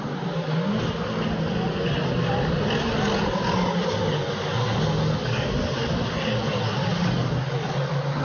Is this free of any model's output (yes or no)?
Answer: yes